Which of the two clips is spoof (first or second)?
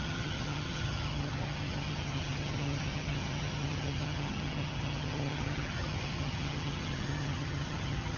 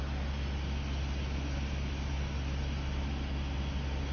first